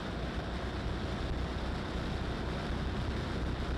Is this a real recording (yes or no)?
yes